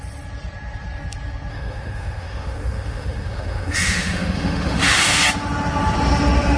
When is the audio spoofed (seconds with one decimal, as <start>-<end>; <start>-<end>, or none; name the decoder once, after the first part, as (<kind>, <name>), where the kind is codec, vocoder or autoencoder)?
1.5-5.2 (autoencoder, DAC-VAE)